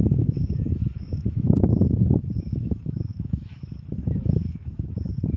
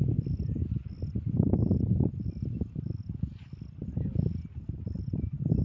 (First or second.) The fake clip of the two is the first